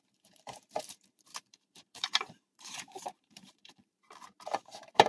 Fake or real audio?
fake